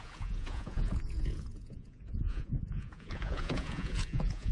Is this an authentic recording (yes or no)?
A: no